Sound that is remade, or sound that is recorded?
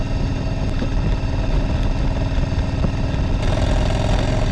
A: recorded